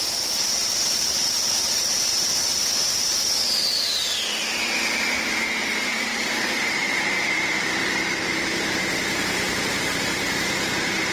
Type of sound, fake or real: fake